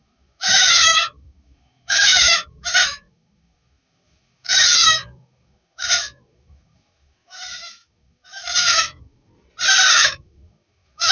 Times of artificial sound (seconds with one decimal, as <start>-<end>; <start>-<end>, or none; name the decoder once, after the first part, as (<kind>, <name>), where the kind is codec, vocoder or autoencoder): 0.0-9.3 (autoencoder, DAC-VAE); 9.9-11.1